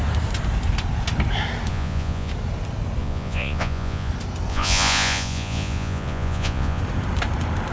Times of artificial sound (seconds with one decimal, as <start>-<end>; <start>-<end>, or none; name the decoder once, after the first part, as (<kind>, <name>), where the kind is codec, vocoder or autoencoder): 1.7-2.3 (vocoder, Vocos); 3.0-4.1; 4.5-6.8